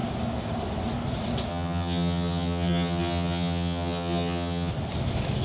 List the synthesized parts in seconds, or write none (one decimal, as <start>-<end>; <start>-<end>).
1.5-4.7